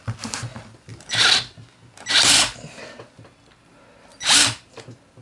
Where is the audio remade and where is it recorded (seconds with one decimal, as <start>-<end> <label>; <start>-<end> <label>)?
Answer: 0.0-0.9 recorded; 0.9-3.2 remade; 3.2-4.1 recorded; 4.1-4.7 remade; 4.7-5.2 recorded